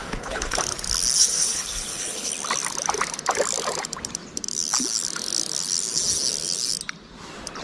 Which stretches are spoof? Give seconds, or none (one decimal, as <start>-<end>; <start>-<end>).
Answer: 0.0-0.6; 1.2-2.3